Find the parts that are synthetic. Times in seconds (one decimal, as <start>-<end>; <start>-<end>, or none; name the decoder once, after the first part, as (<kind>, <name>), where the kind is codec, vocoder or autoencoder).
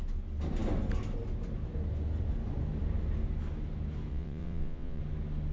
4.1-5.0 (vocoder, WaveNeXt)